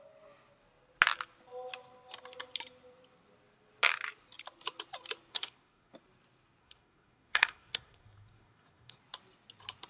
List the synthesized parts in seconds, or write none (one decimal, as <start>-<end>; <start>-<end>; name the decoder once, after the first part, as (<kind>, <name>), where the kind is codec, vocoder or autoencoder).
5.3-5.9 (codec, SNAC); 6.6-9.0